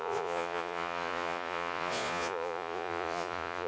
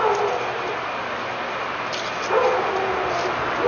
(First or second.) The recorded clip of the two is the second